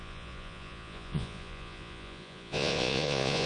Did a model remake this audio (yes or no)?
yes